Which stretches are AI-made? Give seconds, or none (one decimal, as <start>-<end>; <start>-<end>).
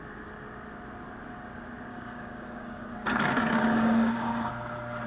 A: 1.9-4.5